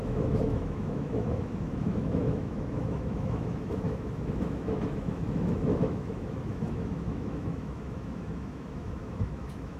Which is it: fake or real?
fake